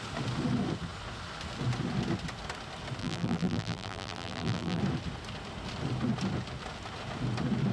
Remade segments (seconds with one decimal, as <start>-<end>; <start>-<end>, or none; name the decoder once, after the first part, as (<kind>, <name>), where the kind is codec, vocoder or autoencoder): 3.0-4.8 (vocoder, BigVGAN v2)